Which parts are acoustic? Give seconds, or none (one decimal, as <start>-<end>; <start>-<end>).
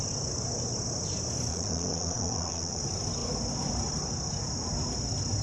0.0-1.5; 2.8-5.4